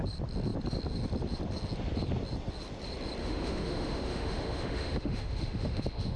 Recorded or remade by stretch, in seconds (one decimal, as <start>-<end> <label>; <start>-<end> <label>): 0.0-3.2 recorded; 3.2-6.2 remade